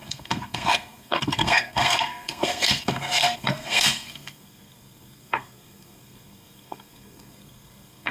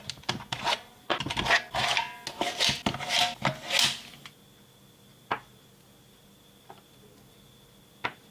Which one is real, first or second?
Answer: second